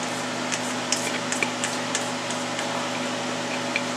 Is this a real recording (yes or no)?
yes